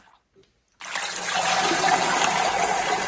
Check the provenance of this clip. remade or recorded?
recorded